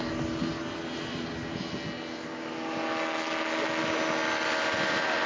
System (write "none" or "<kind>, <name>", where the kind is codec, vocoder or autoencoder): none